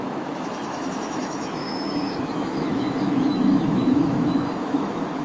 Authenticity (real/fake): fake